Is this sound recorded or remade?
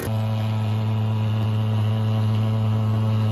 recorded